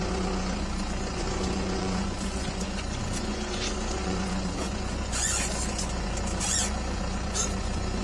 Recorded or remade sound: remade